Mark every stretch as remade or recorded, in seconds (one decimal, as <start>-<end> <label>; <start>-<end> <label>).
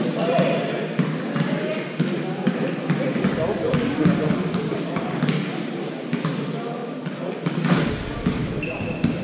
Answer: 0.0-3.1 recorded; 3.1-5.3 remade; 5.3-6.8 recorded; 6.8-7.9 remade; 7.9-8.4 recorded; 8.4-9.2 remade